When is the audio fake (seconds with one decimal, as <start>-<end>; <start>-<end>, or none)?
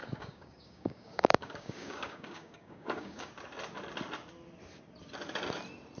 0.0-3.3